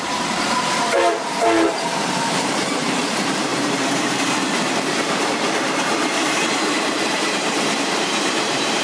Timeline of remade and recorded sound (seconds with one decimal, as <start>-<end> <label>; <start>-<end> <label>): 0.0-8.8 remade